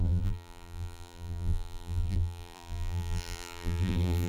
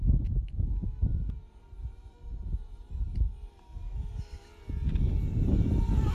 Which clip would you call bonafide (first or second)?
second